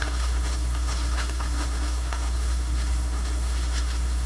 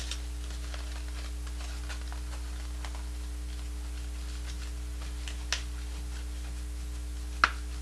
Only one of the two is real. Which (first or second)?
second